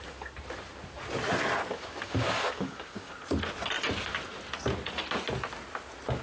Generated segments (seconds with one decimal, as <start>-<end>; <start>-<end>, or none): 1.7-3.1

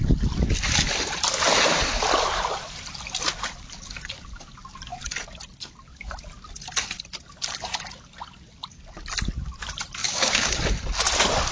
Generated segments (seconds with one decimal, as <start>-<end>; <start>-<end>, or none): 10.0-10.6

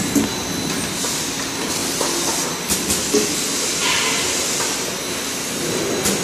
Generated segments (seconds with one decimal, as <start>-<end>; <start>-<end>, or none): none

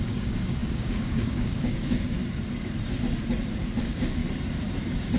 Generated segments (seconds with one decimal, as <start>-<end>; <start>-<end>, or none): 0.0-2.2; 3.8-4.2

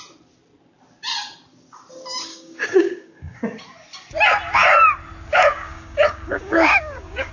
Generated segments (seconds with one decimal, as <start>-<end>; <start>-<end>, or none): 2.3-3.4; 5.3-7.3

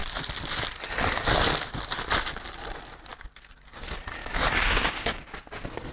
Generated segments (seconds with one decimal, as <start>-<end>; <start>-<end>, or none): 4.2-5.2